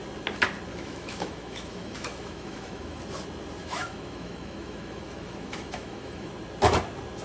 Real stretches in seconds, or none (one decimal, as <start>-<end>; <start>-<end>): 0.0-0.7; 3.0-3.6; 6.3-7.2